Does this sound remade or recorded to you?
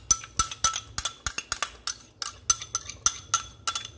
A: recorded